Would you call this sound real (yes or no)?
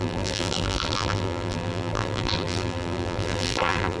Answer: no